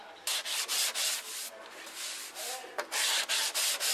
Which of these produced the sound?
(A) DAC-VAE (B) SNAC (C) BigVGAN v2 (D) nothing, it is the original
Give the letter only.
C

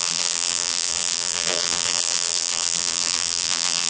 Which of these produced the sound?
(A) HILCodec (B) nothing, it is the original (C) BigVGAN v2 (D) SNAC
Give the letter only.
C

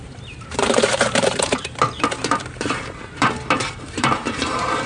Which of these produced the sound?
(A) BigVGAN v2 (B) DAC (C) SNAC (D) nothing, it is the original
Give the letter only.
A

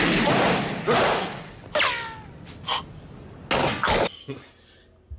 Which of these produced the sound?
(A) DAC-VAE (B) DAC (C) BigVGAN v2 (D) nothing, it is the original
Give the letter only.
D